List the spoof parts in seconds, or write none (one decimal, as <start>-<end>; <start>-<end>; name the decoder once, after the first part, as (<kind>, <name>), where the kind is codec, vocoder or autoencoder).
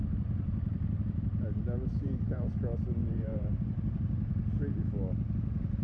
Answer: 1.9-2.6 (vocoder, BigVGAN v2); 3.0-4.6